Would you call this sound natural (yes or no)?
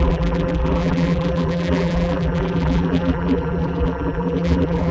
no